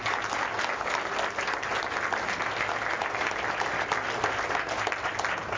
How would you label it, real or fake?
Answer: real